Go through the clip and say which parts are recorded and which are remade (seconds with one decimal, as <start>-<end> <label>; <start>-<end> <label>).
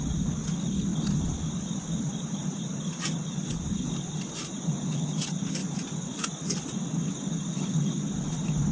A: 0.0-0.9 recorded; 0.9-4.7 remade; 4.7-5.6 recorded; 5.6-6.6 remade; 6.6-8.7 recorded